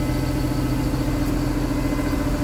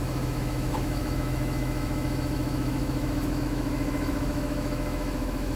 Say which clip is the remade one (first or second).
second